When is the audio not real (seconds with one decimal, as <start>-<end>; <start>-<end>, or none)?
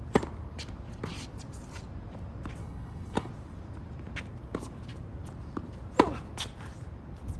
2.6-3.3